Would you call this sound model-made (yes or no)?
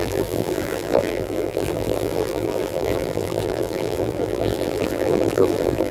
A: yes